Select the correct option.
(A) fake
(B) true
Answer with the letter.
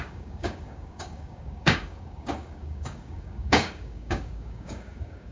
A